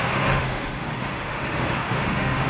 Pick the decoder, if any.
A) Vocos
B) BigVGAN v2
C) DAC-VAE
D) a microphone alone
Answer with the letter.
C